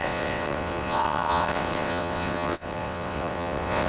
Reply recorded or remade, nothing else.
remade